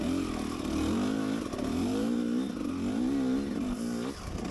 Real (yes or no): yes